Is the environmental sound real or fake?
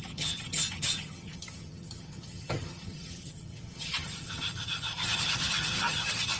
fake